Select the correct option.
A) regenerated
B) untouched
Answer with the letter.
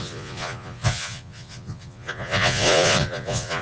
A